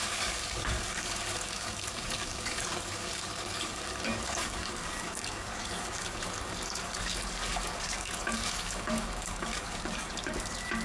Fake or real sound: fake